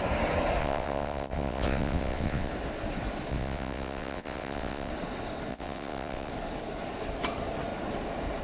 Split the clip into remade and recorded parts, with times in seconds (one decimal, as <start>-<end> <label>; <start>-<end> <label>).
0.0-0.6 recorded; 0.6-2.5 remade; 2.5-3.3 recorded; 3.3-4.9 remade; 4.9-5.5 recorded; 5.5-6.3 remade; 6.3-8.4 recorded